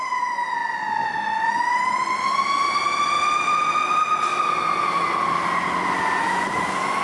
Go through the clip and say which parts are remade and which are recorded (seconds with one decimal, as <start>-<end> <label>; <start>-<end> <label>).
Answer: 0.0-7.0 recorded